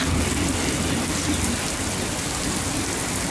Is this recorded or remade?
recorded